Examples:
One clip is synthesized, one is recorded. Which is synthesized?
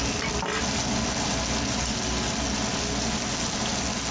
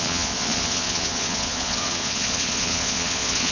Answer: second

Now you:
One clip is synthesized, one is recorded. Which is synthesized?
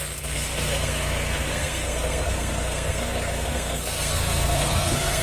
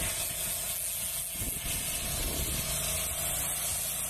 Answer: first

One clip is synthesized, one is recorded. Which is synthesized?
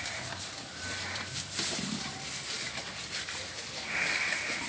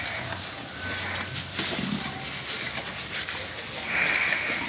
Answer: first